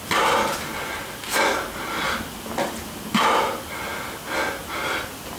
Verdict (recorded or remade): recorded